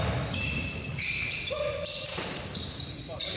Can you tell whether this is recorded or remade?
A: remade